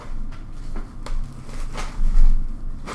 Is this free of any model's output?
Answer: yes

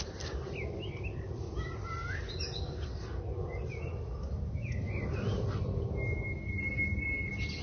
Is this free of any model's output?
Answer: yes